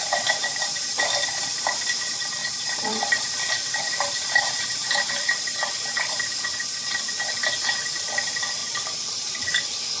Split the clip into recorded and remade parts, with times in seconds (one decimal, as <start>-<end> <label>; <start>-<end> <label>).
0.0-1.1 remade; 1.1-2.4 recorded; 2.4-5.4 remade; 5.4-8.6 recorded; 8.6-9.4 remade; 9.4-10.0 recorded